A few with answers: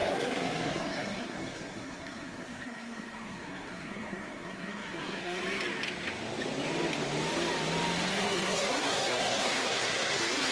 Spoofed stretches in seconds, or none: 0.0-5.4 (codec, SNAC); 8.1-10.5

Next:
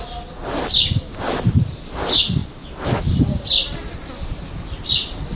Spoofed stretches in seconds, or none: none

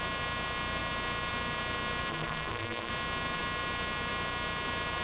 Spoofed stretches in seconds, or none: 2.1-2.9 (codec, SNAC)

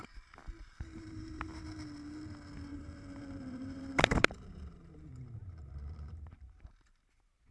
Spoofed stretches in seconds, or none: 0.6-1.6 (vocoder, BigVGAN v2); 2.7-7.1

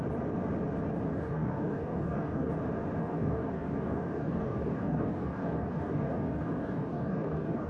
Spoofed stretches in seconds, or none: 1.1-2.5 (codec, DAC); 3.0-7.7

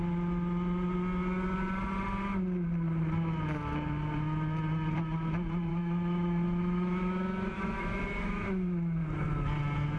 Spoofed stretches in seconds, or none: 5.7-9.0 (autoencoder, DAC-VAE)